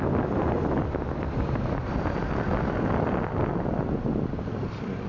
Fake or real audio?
real